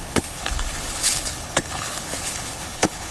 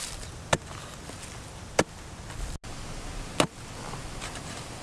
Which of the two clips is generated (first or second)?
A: first